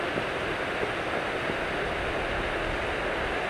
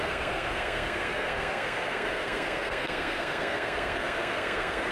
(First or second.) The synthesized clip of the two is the second